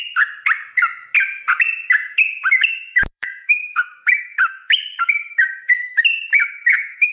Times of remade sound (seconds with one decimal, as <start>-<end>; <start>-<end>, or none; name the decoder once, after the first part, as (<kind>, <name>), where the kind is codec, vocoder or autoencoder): 2.7-7.1 (autoencoder, DAC-VAE)